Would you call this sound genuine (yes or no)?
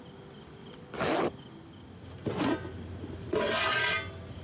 yes